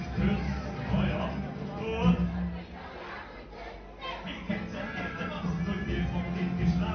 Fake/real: real